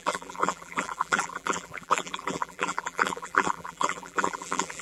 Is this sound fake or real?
fake